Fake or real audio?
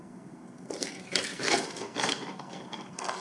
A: fake